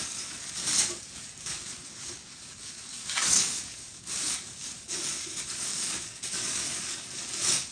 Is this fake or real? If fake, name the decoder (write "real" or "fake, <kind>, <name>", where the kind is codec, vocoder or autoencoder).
fake, codec, DAC